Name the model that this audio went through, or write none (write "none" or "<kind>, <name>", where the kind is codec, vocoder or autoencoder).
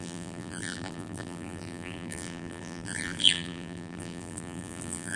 vocoder, BigVGAN v2